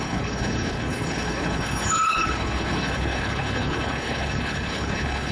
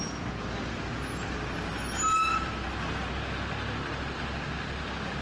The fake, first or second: first